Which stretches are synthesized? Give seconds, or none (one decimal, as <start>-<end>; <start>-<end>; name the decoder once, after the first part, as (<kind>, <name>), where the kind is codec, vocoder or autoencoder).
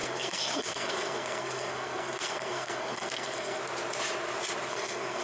0.0-3.6 (codec, SNAC); 4.7-5.2